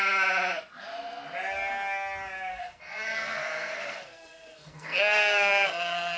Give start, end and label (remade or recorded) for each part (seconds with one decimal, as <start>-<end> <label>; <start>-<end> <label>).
0.0-2.5 recorded; 2.5-6.2 remade